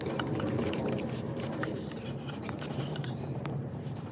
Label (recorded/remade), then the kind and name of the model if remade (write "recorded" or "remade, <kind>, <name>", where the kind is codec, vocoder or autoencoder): remade, vocoder, BigVGAN v2